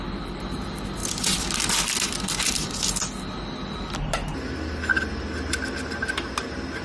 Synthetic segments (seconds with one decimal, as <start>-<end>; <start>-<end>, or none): 0.0-1.0; 2.9-4.9